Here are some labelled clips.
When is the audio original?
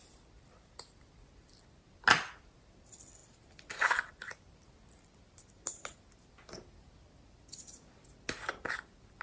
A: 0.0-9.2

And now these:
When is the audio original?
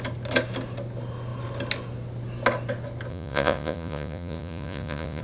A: 0.0-3.1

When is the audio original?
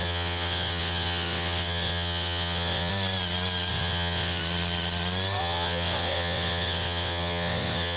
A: 2.9-3.7; 4.4-5.4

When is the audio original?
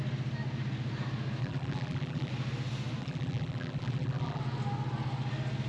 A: 0.0-1.4; 2.3-3.0; 4.4-5.7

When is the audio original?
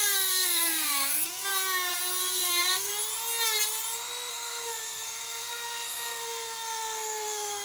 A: 1.5-2.2; 2.9-4.3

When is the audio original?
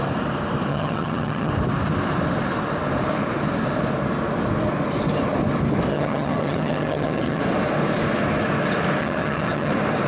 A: 0.0-0.7; 1.5-5.9; 7.4-9.0; 9.7-10.1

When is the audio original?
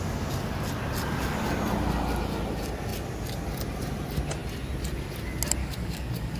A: 0.0-5.6